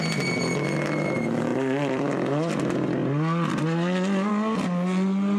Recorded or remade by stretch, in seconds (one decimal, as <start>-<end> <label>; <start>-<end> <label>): 0.0-1.5 recorded; 1.5-2.6 remade; 2.6-5.4 recorded